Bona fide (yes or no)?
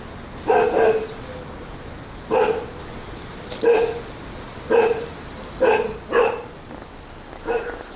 yes